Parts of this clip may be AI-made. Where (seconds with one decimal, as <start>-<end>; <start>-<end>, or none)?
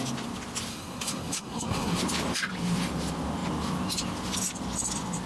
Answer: 0.7-2.0